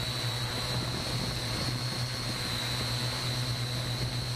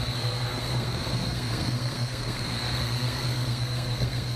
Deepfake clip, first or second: second